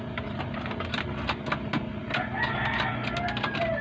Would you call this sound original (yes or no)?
yes